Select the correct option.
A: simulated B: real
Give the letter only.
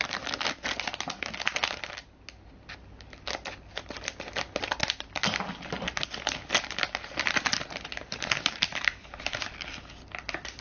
B